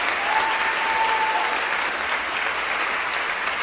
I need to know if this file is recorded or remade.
recorded